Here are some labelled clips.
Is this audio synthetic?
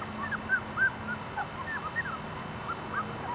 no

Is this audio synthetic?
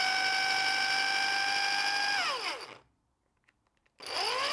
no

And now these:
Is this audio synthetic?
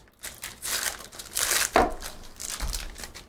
no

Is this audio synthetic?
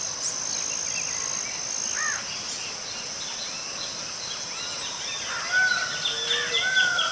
no